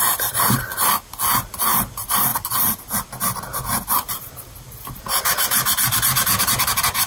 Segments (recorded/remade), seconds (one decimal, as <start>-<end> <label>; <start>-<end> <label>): 0.0-7.1 recorded